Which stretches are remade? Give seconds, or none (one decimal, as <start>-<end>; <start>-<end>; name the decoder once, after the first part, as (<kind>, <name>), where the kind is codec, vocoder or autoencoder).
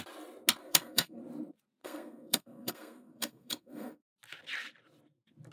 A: 0.6-1.2 (codec, SNAC); 1.8-4.1